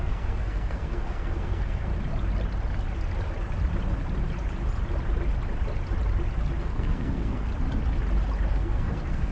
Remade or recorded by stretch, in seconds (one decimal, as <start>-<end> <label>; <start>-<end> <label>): 0.0-1.9 remade; 1.9-6.6 recorded; 6.6-7.5 remade; 7.5-8.5 recorded; 8.5-9.3 remade